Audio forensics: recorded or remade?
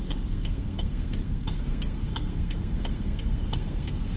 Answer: remade